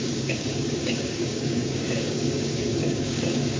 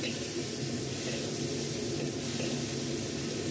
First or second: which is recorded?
second